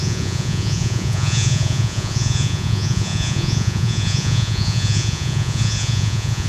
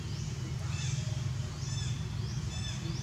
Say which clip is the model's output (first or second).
first